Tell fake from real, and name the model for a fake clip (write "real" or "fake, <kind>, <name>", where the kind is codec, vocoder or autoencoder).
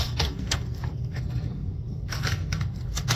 fake, codec, SNAC